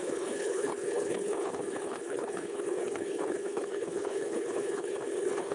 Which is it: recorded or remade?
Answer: remade